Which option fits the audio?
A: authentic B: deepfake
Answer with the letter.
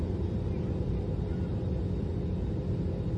A